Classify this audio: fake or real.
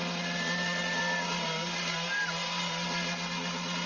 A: real